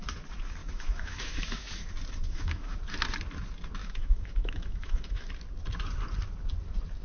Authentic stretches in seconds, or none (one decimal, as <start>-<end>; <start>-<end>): 0.0-0.6; 1.7-2.2; 2.8-3.8; 5.3-7.0